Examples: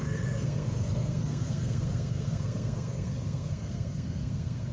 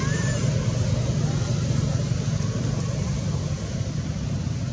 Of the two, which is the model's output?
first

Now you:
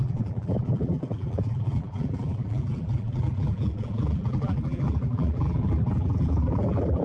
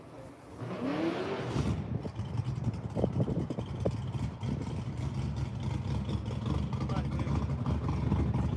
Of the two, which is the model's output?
first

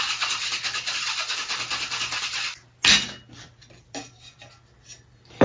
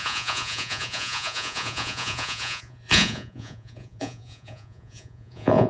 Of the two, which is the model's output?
second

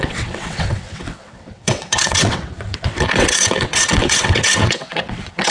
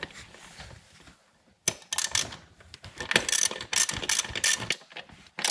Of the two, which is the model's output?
first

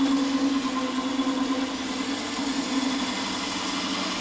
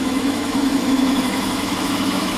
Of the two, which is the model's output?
second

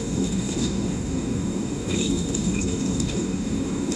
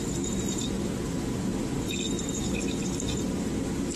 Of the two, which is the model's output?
first